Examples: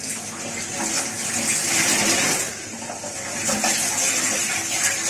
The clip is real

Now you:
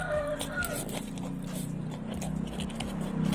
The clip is real